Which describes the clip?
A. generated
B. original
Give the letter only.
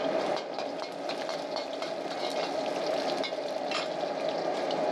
B